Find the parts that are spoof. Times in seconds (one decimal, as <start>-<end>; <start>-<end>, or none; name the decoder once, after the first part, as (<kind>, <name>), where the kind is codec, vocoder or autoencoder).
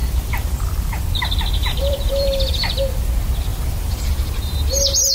0.0-1.0 (vocoder, BigVGAN v2); 1.6-2.5; 3.5-4.1